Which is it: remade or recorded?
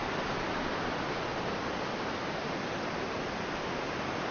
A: recorded